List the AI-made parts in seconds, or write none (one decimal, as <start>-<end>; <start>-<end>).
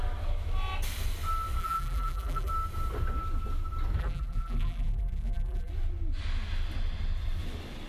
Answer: 1.6-2.5; 4.0-5.7